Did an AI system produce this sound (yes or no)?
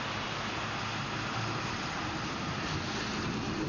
no